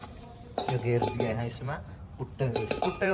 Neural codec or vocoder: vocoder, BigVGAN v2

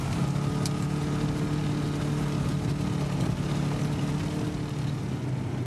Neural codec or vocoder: none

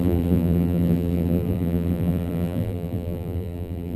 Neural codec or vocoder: vocoder, BigVGAN v2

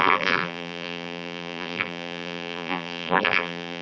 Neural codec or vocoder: vocoder, BigVGAN v2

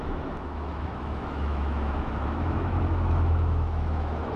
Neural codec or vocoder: autoencoder, DAC-VAE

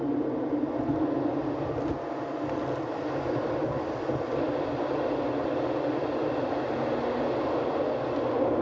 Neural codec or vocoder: none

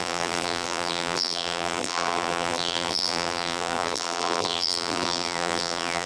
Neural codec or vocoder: vocoder, BigVGAN v2